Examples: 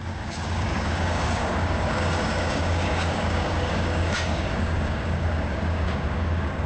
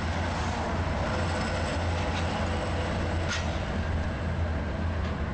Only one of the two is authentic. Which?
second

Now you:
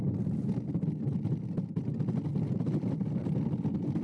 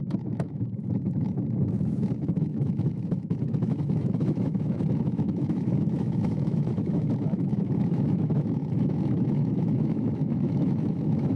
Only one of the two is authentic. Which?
first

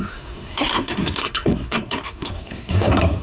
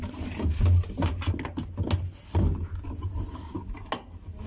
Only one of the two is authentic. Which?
second